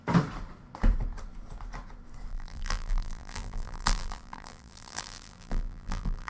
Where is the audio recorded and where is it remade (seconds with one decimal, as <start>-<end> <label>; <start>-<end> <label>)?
0.0-2.3 recorded; 2.3-6.3 remade